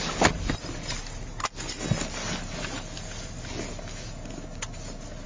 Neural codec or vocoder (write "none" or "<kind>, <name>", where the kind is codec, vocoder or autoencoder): none